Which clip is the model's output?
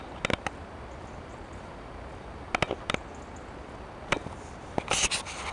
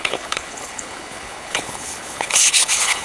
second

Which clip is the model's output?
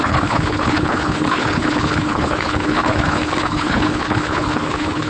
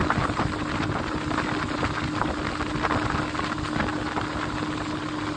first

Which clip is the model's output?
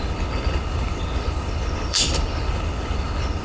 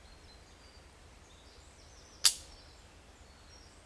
first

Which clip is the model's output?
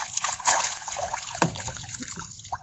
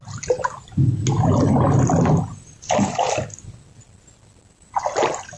first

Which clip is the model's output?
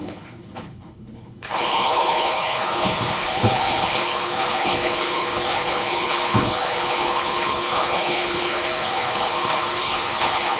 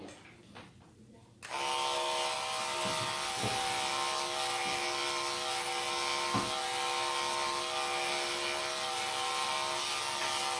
first